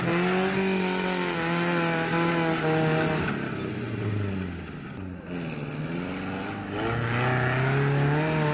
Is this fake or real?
real